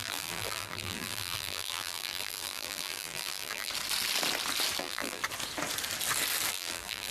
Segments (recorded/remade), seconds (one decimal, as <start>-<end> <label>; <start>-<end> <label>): 0.0-3.7 remade; 3.7-4.8 recorded; 4.8-5.2 remade; 5.2-6.5 recorded; 6.5-7.1 remade